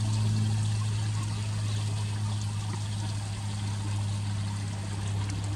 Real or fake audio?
real